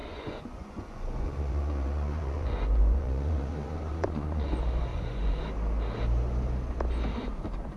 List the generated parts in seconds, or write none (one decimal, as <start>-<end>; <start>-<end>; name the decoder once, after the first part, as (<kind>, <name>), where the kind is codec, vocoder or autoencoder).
0.0-4.5 (vocoder, Vocos); 4.9-5.4